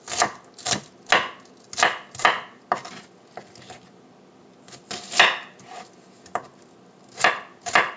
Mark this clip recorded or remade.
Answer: recorded